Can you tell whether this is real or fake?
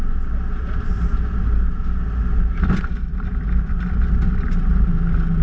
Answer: real